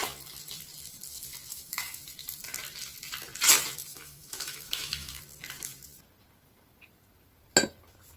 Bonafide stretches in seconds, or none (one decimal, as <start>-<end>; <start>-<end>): 0.0-1.5; 2.0-3.9; 5.2-8.2